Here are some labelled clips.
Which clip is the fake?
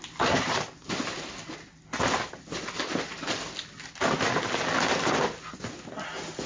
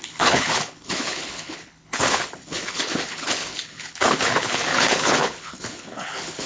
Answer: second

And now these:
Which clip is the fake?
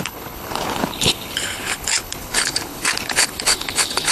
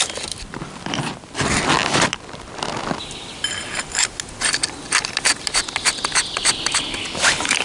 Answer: first